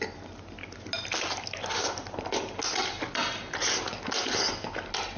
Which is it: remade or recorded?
recorded